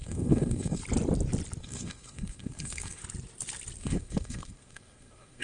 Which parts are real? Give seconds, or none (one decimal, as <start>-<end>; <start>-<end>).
0.8-1.6; 3.0-3.8